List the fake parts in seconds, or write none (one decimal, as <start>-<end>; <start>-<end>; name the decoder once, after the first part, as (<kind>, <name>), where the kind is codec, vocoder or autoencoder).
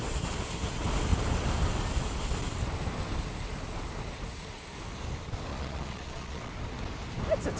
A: 5.5-6.5 (vocoder, Vocos)